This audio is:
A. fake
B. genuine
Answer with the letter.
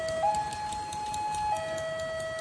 B